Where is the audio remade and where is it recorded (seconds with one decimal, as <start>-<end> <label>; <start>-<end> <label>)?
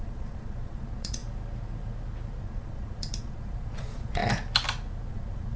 0.0-1.2 remade; 1.2-2.4 recorded; 2.4-4.2 remade; 4.2-5.1 recorded; 5.1-5.6 remade